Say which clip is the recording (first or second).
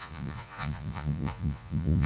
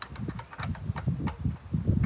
second